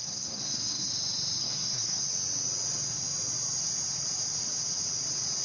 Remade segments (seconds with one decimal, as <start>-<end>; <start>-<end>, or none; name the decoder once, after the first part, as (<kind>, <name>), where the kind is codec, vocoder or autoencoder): 0.0-0.9 (codec, SNAC); 1.4-2.0